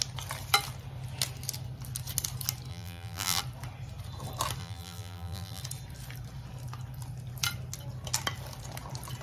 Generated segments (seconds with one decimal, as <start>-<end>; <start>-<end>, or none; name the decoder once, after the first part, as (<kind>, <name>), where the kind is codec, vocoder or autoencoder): 2.7-3.4 (vocoder, BigVGAN v2); 4.6-5.6